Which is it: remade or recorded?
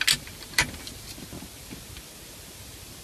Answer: recorded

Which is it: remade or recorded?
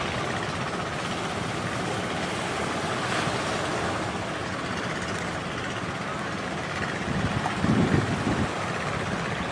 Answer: recorded